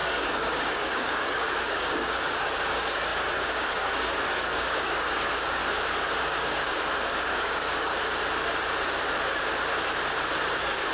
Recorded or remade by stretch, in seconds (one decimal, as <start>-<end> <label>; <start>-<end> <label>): 0.0-5.6 remade; 5.6-6.2 recorded; 6.2-7.9 remade; 7.9-10.5 recorded; 10.5-10.9 remade